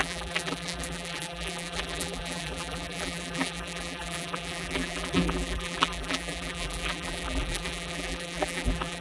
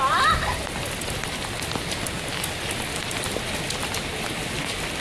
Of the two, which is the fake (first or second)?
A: first